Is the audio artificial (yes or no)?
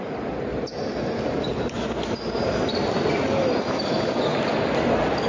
no